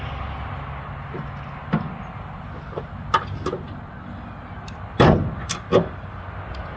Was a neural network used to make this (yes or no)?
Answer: no